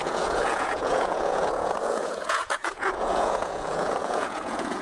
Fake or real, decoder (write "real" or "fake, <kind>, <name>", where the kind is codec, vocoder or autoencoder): fake, vocoder, Vocos